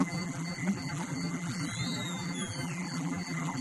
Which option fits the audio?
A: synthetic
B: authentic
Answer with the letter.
A